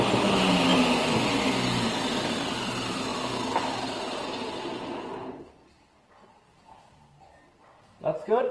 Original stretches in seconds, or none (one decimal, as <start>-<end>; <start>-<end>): 0.0-5.2